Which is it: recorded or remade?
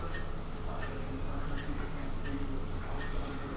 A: recorded